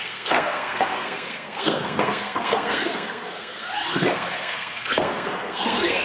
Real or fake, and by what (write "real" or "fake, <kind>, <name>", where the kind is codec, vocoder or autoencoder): fake, codec, SNAC